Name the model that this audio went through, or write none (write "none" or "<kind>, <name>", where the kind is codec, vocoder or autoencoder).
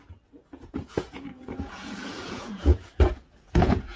vocoder, Vocos